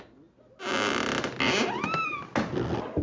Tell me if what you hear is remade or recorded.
recorded